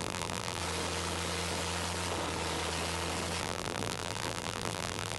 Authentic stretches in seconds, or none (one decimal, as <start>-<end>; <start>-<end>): 0.6-3.4